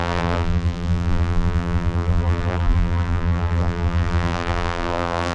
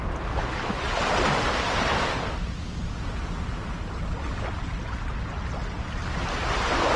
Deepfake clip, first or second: first